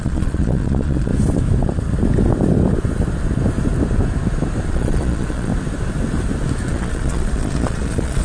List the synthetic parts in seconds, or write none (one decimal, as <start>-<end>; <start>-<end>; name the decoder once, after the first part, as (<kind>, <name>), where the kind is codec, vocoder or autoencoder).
0.0-1.1 (vocoder, Vocos); 4.7-5.5; 6.7-8.2